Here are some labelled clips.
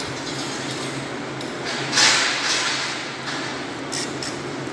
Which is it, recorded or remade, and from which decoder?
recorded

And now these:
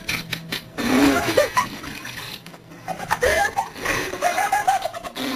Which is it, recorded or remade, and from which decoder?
remade, codec, SNAC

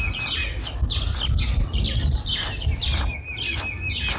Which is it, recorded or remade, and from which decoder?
recorded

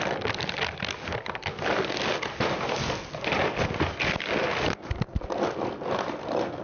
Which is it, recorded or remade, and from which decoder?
recorded